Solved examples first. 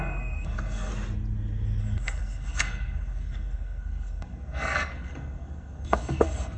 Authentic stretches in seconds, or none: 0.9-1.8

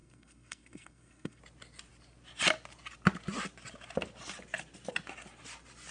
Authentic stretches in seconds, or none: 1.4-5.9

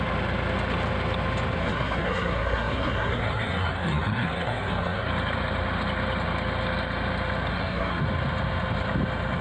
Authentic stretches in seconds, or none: 0.0-1.6; 5.1-7.5; 8.0-9.4